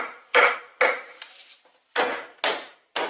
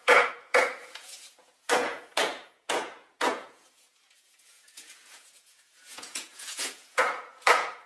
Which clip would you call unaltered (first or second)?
first